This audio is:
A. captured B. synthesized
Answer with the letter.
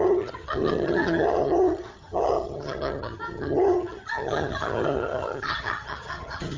B